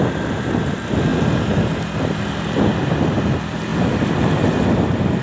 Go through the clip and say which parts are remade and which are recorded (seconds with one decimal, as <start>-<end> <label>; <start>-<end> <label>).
0.0-5.2 recorded